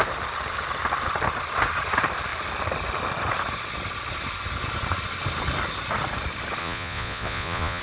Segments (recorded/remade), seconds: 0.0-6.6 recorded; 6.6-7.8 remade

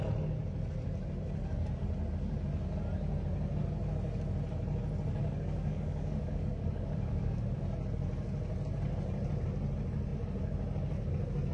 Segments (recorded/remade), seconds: 0.0-5.2 recorded; 5.2-7.4 remade; 7.4-11.5 recorded

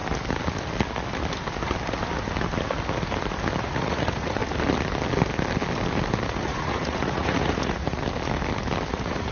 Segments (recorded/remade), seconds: 0.0-3.6 recorded; 3.6-4.4 remade; 4.4-6.4 recorded; 6.4-8.0 remade; 8.0-8.9 recorded; 8.9-9.3 remade

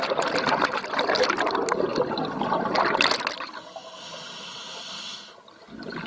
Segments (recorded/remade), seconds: 0.0-6.1 recorded

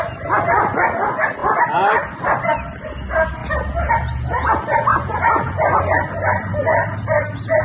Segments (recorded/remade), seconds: 0.0-4.9 recorded; 4.9-5.8 remade; 5.8-7.6 recorded

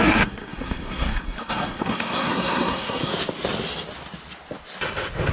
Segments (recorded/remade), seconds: 0.0-3.1 remade; 3.1-5.3 recorded